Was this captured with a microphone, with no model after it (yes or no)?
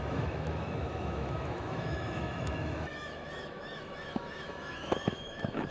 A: no